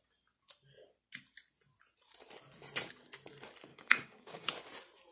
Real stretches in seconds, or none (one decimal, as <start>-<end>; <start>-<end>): 0.0-3.7; 4.5-5.1